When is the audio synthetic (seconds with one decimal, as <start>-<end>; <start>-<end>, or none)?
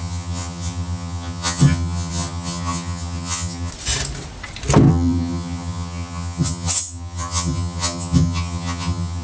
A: 0.0-3.7; 4.9-9.2